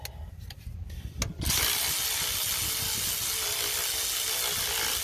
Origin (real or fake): real